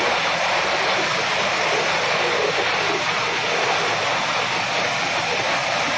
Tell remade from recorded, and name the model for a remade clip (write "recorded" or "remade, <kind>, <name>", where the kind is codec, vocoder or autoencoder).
recorded